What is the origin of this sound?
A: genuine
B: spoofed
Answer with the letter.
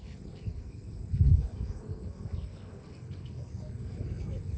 B